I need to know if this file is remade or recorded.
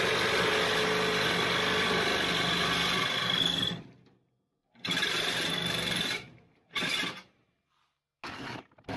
recorded